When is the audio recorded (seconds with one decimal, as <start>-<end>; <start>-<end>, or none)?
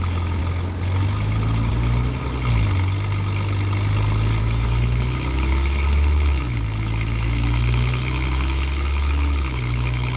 0.4-4.4